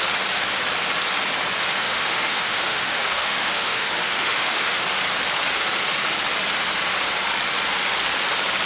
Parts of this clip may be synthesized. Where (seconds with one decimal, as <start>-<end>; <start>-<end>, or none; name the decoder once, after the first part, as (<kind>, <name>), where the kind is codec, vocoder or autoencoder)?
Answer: 1.8-4.8 (autoencoder, DAC-VAE)